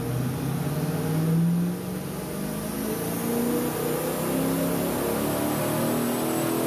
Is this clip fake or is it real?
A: real